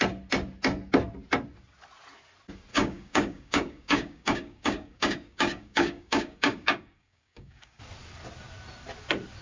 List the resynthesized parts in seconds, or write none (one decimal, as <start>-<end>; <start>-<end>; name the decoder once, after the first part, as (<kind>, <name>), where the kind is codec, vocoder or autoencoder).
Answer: 2.7-7.8 (codec, DAC)